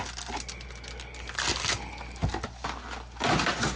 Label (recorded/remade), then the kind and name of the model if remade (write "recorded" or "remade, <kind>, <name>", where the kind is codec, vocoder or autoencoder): recorded